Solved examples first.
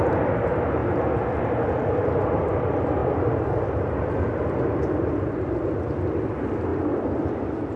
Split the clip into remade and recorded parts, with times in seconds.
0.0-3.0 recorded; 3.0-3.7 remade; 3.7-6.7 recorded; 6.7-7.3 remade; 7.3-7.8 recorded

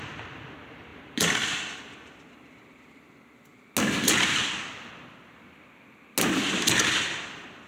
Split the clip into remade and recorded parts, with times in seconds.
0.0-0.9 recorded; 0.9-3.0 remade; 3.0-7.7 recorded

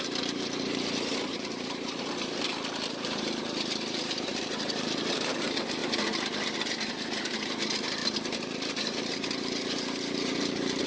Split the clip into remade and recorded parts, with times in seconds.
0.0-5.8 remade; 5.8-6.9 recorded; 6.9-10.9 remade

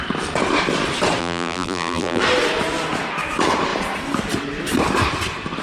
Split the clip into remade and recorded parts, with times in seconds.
0.0-1.2 recorded; 1.2-2.2 remade; 2.2-5.6 recorded

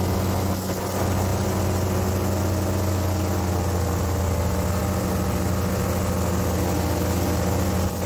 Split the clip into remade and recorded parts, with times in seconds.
0.0-8.1 recorded

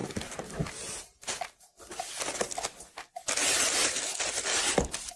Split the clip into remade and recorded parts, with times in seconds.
0.0-5.2 recorded

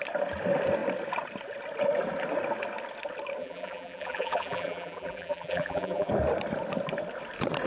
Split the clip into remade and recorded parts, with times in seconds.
0.0-3.4 recorded; 3.4-6.1 remade; 6.1-7.7 recorded